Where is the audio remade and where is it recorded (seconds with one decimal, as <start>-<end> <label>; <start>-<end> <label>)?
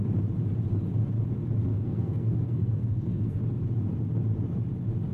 0.0-1.7 recorded; 1.7-3.4 remade; 3.4-5.1 recorded